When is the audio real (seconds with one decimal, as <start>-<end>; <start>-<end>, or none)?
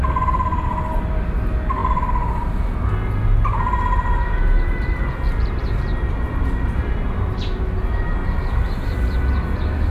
0.0-9.9